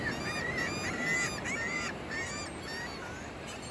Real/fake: real